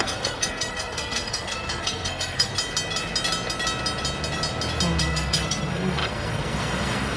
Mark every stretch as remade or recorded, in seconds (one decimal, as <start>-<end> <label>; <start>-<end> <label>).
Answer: 0.0-2.5 remade; 2.5-5.0 recorded; 5.0-7.2 remade